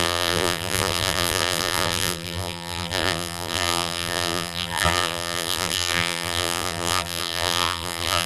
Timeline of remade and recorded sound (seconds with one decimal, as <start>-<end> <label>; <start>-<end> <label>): 0.0-8.3 remade